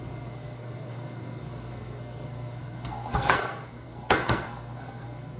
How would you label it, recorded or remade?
remade